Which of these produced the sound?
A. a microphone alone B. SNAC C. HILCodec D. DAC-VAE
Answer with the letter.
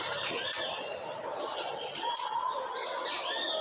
A